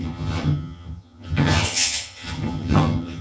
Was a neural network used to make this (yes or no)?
yes